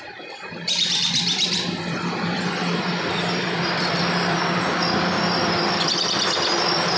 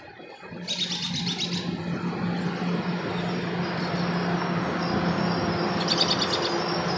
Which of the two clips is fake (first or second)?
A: first